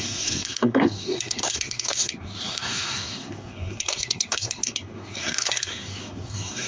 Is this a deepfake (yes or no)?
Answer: yes